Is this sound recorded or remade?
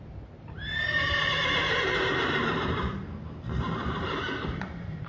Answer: remade